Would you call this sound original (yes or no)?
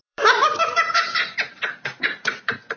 no